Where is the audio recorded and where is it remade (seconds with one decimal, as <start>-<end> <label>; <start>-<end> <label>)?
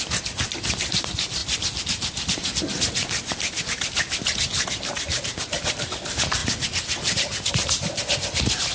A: 0.0-1.4 remade; 1.4-4.9 recorded; 4.9-6.4 remade; 6.4-7.5 recorded; 7.5-8.7 remade